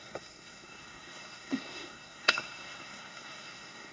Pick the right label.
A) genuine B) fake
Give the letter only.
B